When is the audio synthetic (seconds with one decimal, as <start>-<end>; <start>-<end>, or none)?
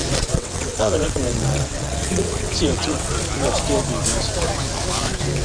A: 0.0-3.2